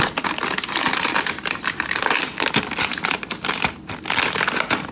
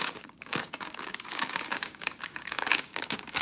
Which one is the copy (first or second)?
second